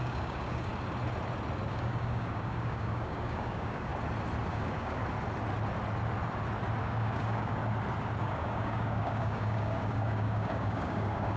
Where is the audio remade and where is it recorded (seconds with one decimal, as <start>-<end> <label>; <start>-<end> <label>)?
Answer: 0.0-0.7 remade; 0.7-1.7 recorded; 1.7-3.9 remade; 3.9-4.5 recorded; 4.5-5.0 remade; 5.0-6.8 recorded; 6.8-7.6 remade; 7.6-8.2 recorded; 8.2-11.4 remade